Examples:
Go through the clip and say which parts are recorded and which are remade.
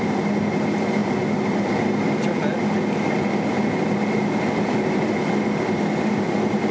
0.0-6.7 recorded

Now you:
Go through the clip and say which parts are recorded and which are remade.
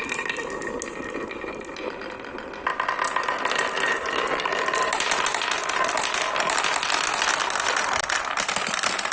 0.0-9.1 recorded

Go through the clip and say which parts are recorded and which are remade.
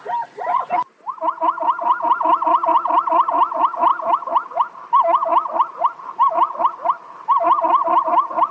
0.0-8.5 recorded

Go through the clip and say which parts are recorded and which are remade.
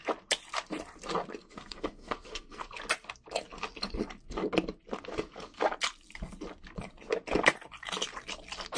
0.0-1.4 recorded; 1.4-2.7 remade; 2.7-8.8 recorded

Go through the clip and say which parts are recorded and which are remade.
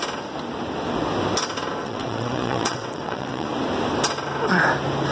0.0-1.8 recorded; 1.8-3.5 remade; 3.5-5.1 recorded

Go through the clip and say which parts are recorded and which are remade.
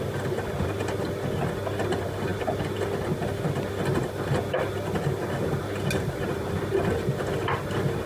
0.0-8.1 recorded